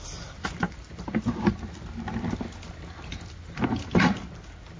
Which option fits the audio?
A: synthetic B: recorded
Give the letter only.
B